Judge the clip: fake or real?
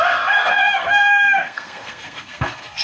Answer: fake